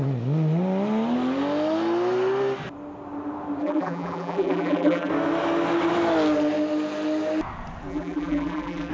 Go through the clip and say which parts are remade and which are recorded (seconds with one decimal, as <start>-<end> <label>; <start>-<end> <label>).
0.0-3.6 recorded; 3.6-5.1 remade; 5.1-7.9 recorded; 7.9-8.9 remade